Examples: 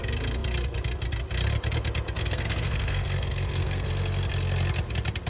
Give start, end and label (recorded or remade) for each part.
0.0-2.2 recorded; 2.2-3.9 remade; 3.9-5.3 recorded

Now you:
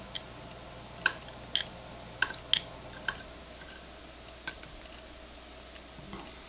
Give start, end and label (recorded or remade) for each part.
0.0-6.5 recorded

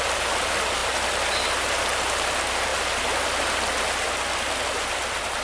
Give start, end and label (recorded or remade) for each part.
0.0-5.4 recorded